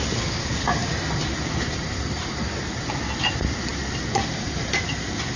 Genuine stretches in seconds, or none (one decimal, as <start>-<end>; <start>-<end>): 0.0-0.8; 2.9-5.4